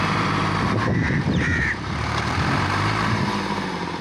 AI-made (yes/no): yes